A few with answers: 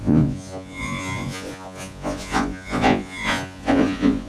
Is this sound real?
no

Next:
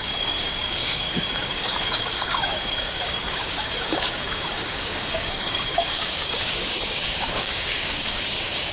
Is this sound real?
no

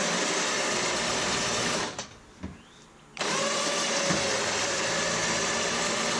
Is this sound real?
yes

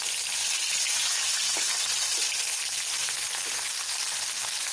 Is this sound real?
yes